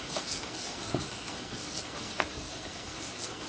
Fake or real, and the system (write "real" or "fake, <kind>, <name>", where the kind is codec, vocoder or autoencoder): fake, codec, SNAC